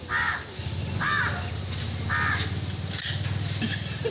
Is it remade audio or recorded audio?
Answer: recorded